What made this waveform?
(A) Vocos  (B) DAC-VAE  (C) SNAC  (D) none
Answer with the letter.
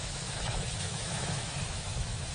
B